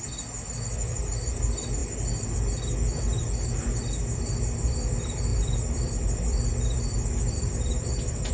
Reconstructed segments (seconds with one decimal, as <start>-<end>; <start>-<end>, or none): 5.3-8.3